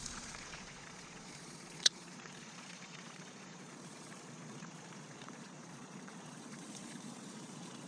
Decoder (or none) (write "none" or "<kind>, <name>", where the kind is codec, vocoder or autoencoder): vocoder, Vocos